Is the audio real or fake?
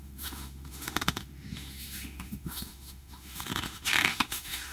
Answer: fake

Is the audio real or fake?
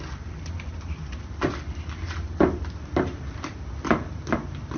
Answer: real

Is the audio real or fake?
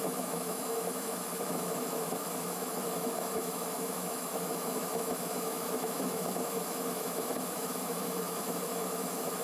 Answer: fake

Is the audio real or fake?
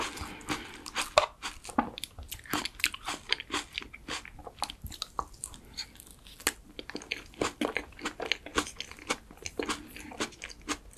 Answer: real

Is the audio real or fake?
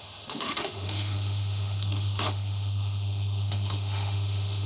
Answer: fake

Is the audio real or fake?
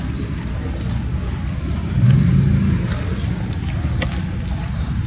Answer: real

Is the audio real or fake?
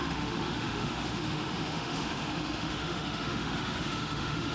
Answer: fake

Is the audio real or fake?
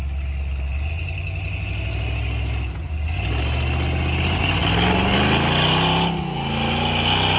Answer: real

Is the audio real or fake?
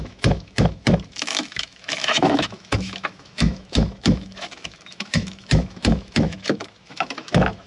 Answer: fake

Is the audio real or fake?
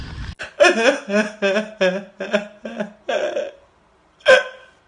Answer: real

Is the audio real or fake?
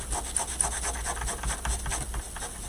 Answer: real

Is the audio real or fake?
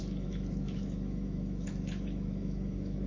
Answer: fake